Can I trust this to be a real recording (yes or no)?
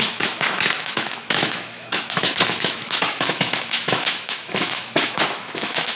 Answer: no